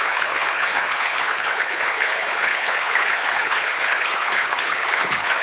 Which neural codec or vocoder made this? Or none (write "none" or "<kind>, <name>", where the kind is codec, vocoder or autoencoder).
codec, HILCodec